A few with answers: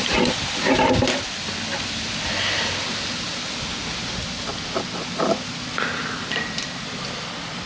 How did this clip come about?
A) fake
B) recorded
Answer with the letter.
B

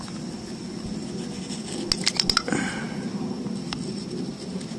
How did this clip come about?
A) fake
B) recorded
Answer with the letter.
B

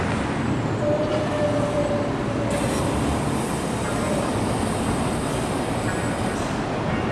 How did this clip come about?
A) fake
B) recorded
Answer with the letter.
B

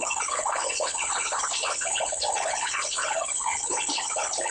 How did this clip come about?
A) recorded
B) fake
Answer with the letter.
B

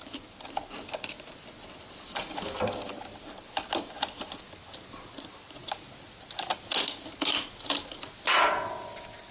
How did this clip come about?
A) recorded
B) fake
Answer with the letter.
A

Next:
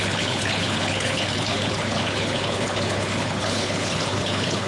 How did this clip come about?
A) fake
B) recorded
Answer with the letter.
A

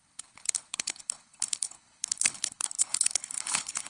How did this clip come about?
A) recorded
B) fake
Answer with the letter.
B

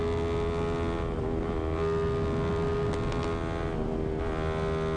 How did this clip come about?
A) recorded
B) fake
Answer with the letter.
A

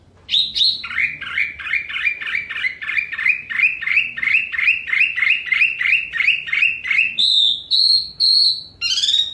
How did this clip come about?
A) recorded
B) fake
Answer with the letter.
A